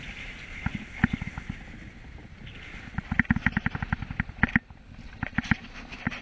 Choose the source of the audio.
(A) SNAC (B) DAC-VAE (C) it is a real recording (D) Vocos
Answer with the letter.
C